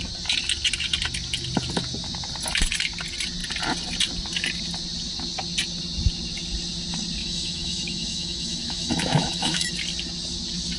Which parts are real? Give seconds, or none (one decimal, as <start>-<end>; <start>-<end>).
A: 0.0-7.2; 9.7-10.8